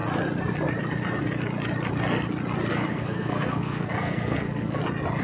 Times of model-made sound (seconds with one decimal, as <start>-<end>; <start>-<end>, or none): 2.7-4.8